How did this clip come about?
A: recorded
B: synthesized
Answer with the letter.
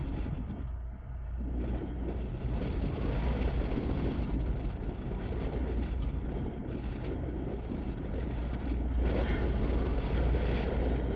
A